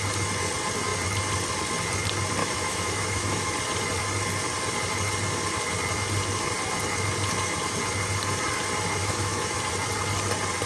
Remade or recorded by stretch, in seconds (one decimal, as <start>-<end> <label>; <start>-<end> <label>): 0.0-2.4 recorded; 2.4-3.5 remade; 3.5-9.0 recorded; 9.0-9.6 remade; 9.6-10.7 recorded